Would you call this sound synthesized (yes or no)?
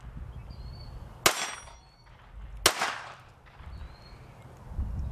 no